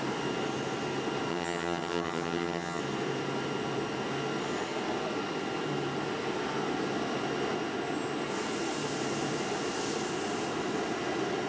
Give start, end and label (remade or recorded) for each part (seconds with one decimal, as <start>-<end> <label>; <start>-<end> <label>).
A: 0.0-1.3 recorded; 1.3-2.8 remade; 2.8-11.5 recorded

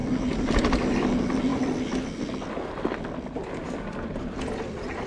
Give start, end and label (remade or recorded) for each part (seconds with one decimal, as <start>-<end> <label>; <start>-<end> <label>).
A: 0.0-5.1 recorded

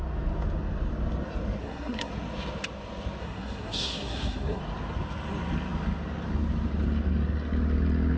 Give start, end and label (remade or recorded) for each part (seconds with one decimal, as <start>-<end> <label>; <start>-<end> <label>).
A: 0.0-1.6 recorded; 1.6-2.1 remade; 2.1-3.2 recorded; 3.2-4.6 remade; 4.6-8.2 recorded

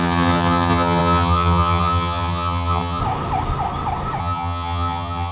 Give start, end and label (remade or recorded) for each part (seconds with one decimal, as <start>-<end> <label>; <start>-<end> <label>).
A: 0.0-3.0 remade; 3.0-4.2 recorded; 4.2-5.3 remade

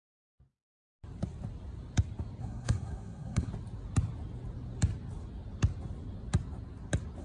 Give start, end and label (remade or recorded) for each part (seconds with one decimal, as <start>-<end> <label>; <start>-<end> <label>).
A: 0.0-2.4 recorded; 2.4-3.5 remade; 3.5-7.2 recorded

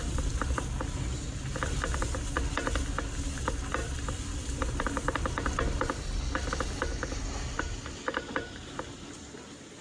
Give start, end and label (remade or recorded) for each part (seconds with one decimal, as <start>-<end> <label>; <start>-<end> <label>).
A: 0.0-3.8 recorded; 3.8-6.5 remade; 6.5-9.8 recorded

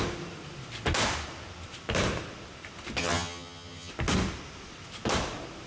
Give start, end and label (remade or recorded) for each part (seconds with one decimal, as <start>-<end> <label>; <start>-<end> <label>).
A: 0.0-3.0 recorded; 3.0-3.9 remade; 3.9-5.7 recorded